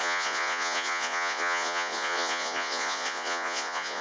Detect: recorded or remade remade